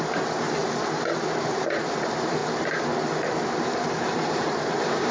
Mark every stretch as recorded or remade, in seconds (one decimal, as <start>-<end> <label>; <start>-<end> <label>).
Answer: 0.0-0.6 remade; 0.6-1.8 recorded; 1.8-2.4 remade; 2.4-3.5 recorded; 3.5-5.1 remade